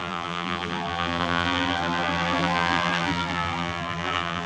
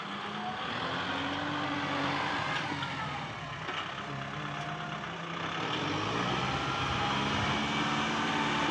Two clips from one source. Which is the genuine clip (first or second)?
second